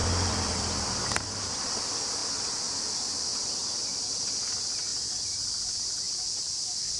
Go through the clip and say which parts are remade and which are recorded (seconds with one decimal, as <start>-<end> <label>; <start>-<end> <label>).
0.0-1.7 remade; 1.7-4.9 recorded; 4.9-6.6 remade; 6.6-7.0 recorded